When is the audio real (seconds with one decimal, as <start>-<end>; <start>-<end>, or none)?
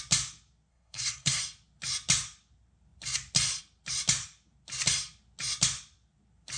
0.0-0.7; 1.4-6.6